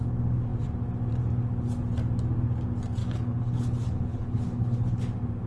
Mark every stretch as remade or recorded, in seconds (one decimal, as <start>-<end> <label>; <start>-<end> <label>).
0.0-3.0 recorded; 3.0-5.0 remade; 5.0-5.5 recorded